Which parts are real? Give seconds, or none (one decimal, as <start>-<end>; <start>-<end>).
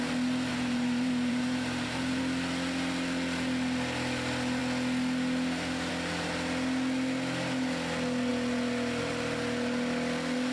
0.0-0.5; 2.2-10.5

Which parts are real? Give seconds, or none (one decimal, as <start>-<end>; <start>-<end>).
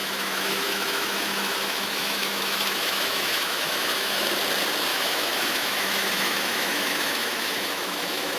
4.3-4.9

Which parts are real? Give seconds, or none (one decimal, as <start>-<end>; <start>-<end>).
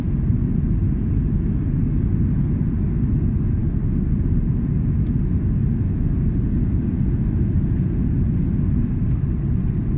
0.0-10.0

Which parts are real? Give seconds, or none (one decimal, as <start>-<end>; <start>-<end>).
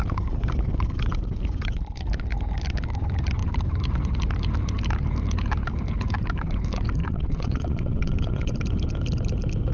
0.0-7.0; 8.5-9.7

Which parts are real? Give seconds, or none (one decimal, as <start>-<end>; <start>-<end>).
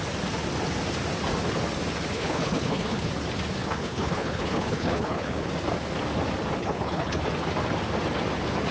0.0-2.1; 3.1-3.6; 5.5-6.6; 7.2-8.7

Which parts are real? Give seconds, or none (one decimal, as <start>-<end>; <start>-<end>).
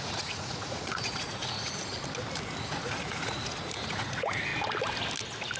1.9-2.6; 4.5-5.6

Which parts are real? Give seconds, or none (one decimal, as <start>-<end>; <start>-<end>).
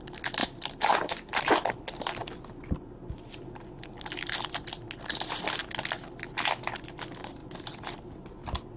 0.0-0.4; 1.7-2.2; 3.0-7.4; 7.9-8.8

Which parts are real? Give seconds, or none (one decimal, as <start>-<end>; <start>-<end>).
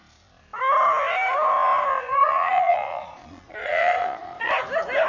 0.0-2.0; 4.5-5.1